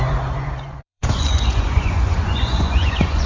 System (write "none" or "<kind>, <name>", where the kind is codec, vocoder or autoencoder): vocoder, Vocos